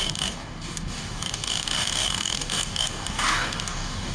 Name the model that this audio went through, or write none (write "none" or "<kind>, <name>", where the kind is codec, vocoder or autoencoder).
codec, DAC